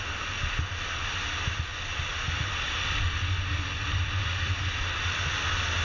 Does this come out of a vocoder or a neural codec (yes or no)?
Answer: no